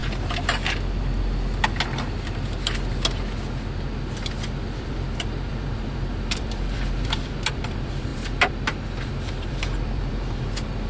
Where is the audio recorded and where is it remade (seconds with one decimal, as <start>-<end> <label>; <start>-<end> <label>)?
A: 0.0-4.8 recorded; 4.8-10.9 remade